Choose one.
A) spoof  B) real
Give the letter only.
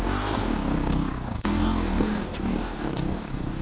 A